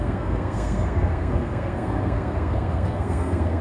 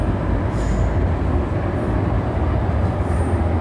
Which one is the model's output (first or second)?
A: first